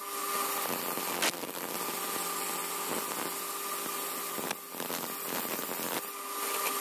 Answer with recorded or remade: recorded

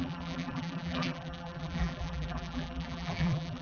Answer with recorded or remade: remade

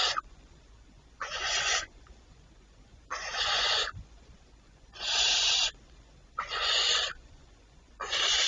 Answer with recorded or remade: remade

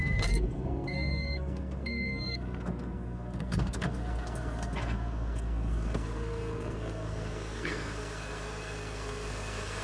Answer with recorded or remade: remade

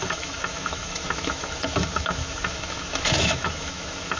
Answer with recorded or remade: remade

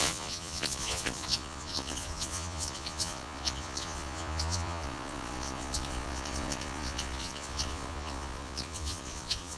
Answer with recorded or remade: remade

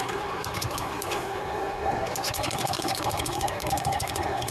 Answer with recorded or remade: remade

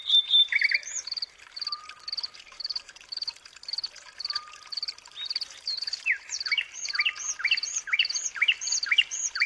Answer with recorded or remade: remade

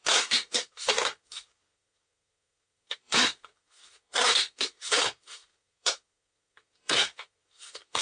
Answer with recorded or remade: remade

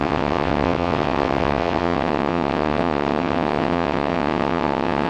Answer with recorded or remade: remade